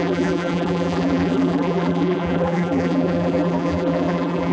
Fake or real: fake